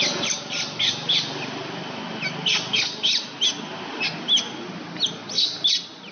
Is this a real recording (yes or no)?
yes